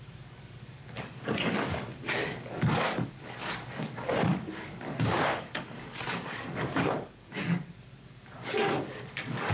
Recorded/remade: remade